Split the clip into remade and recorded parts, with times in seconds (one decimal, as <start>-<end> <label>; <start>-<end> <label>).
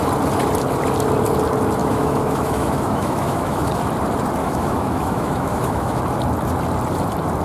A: 0.0-1.8 recorded; 1.8-3.7 remade; 3.7-4.4 recorded; 4.4-6.0 remade; 6.0-7.4 recorded